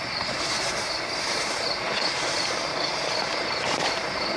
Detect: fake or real fake